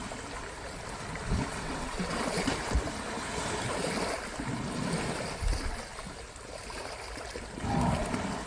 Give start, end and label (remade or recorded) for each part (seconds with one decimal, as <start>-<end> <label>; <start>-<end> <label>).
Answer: 0.0-1.5 recorded; 1.5-2.2 remade; 2.2-8.5 recorded